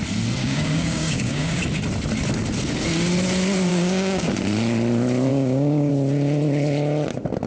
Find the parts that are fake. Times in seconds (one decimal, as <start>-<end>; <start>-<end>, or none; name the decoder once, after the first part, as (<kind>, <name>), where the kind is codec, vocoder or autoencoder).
0.4-1.6 (codec, DAC); 3.7-4.3; 5.3-5.9